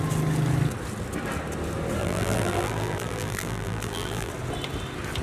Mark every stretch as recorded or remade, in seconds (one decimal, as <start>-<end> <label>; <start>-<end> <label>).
0.0-2.0 recorded; 2.0-4.3 remade; 4.3-5.2 recorded